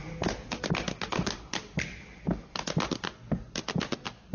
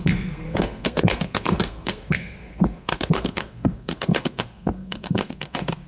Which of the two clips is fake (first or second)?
second